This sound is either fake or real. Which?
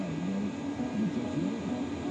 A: real